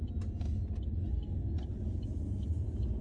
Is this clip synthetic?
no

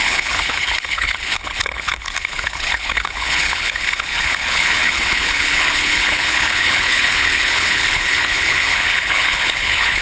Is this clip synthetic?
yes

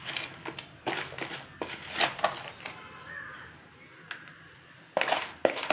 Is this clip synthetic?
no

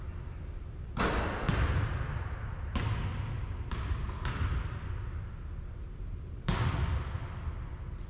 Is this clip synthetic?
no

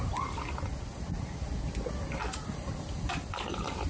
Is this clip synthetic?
no